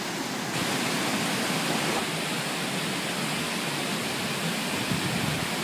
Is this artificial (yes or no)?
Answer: no